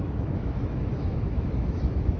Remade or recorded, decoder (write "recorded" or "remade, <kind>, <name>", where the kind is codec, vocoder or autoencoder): remade, autoencoder, DAC-VAE